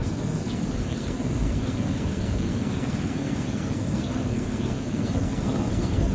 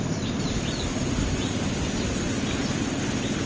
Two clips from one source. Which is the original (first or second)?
second